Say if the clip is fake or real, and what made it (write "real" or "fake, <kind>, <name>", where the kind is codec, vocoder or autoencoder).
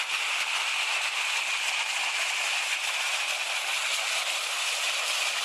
fake, vocoder, BigVGAN v2